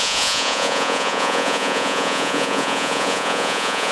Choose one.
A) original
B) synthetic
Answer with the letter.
B